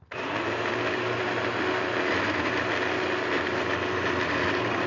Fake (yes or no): no